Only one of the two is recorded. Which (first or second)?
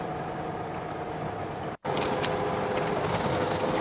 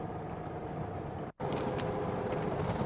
first